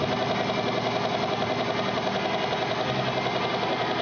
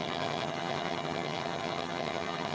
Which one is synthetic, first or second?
second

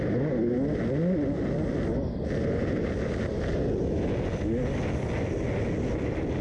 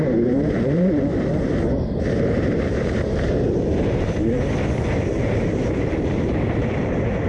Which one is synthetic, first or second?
second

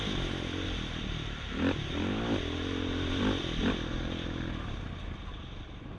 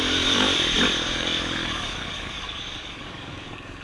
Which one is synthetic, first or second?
second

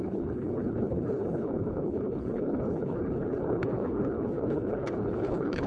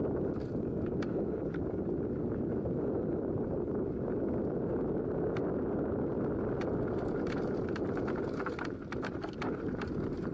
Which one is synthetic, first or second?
first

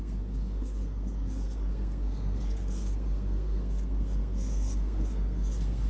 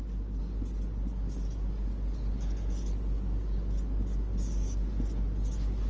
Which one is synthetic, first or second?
first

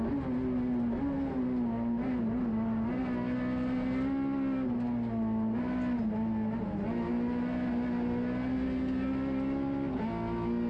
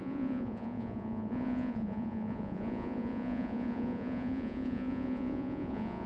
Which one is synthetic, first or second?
second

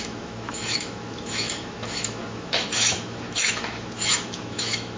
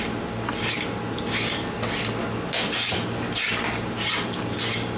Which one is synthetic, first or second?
first